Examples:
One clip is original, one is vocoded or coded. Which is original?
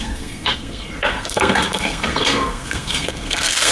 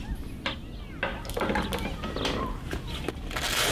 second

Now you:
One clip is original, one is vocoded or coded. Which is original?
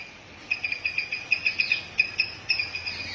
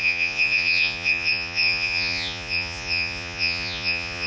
first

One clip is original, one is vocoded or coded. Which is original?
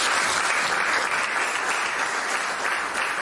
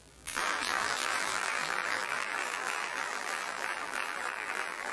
first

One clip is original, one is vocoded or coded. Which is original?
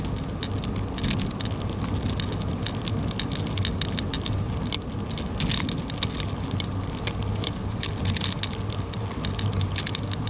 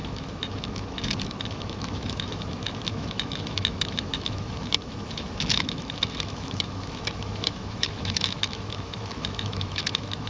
first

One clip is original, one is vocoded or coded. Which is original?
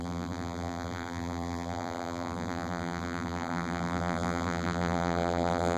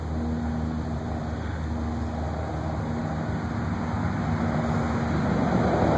second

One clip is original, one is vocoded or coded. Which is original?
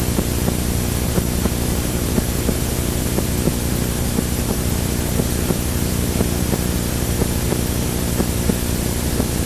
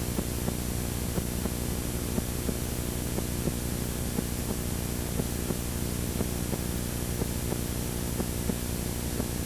second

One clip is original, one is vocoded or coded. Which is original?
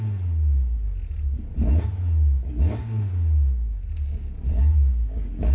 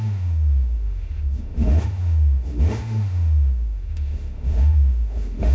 first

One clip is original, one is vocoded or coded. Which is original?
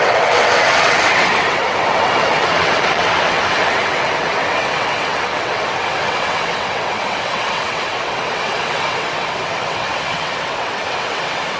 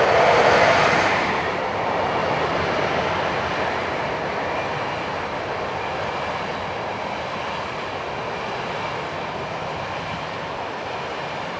second